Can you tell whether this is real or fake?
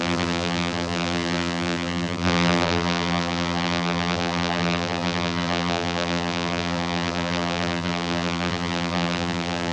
fake